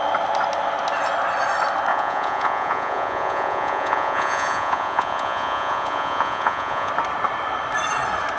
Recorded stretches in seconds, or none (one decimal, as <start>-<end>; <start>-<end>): 0.0-1.9; 6.9-8.4